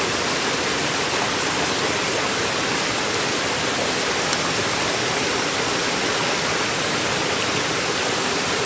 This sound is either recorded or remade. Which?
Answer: recorded